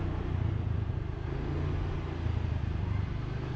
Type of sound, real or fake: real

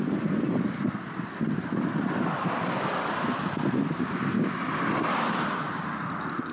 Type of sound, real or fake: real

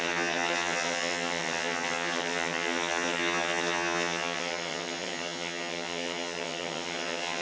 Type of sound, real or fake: fake